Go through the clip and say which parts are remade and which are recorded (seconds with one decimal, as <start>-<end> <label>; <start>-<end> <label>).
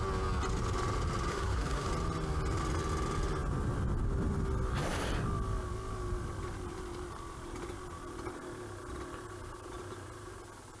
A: 0.0-1.3 recorded; 1.3-1.9 remade; 1.9-10.8 recorded